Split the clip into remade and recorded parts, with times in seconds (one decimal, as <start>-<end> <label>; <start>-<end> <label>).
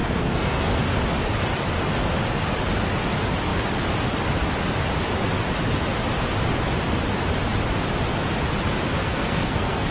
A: 0.0-0.8 remade; 0.8-9.0 recorded; 9.0-9.9 remade